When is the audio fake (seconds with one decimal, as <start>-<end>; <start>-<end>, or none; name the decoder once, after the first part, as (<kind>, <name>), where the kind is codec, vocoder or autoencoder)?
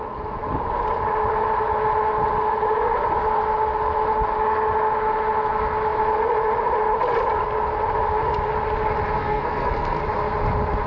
9.2-10.0 (codec, SNAC)